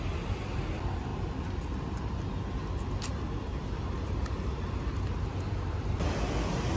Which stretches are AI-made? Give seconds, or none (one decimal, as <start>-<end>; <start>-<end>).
none